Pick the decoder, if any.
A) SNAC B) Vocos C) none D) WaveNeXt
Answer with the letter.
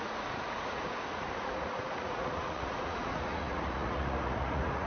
B